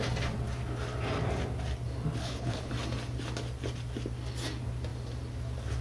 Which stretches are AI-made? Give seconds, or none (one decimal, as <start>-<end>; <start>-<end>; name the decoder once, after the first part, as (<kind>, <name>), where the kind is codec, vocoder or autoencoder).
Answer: 2.2-2.7 (codec, HILCodec)

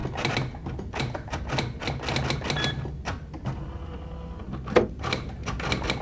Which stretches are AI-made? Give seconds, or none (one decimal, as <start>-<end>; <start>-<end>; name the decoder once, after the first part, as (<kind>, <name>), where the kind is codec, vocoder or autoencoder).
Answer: 1.0-1.8 (vocoder, BigVGAN v2); 4.9-5.4

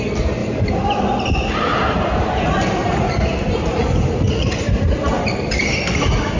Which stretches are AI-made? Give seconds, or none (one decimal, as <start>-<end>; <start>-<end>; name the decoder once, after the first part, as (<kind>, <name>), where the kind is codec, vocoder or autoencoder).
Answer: 0.4-1.0 (vocoder, BigVGAN v2); 1.7-5.5

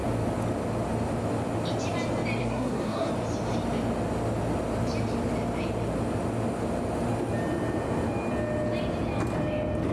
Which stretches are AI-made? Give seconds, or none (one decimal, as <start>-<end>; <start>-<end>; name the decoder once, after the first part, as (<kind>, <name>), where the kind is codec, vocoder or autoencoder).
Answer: 2.4-3.1 (codec, SNAC)